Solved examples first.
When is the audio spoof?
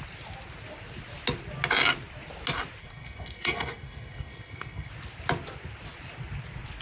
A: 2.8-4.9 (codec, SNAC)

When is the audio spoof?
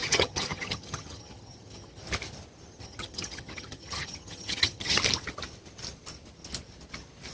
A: 0.0-2.0 (vocoder, HiFi-GAN); 2.7-5.0